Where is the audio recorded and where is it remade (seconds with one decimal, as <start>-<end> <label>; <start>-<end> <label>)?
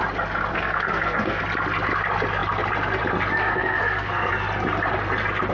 0.0-0.5 recorded; 0.5-1.4 remade; 1.4-3.4 recorded; 3.4-4.3 remade; 4.3-5.5 recorded